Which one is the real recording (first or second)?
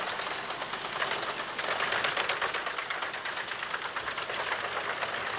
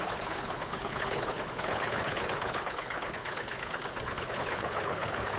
first